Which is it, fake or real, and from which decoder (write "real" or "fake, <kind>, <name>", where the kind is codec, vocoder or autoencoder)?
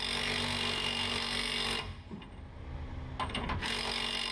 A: real